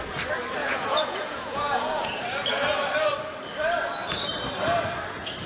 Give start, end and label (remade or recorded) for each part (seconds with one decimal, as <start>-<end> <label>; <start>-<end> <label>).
0.0-0.6 recorded; 0.6-2.2 remade; 2.2-5.5 recorded